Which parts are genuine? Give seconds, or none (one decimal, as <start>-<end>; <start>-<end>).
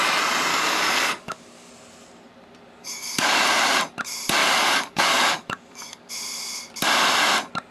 0.0-0.5; 1.7-2.8; 3.4-4.4; 6.1-7.7